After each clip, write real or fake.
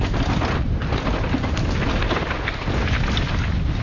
real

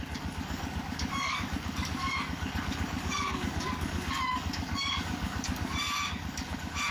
fake